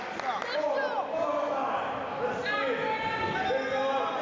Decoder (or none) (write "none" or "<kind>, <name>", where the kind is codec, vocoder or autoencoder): none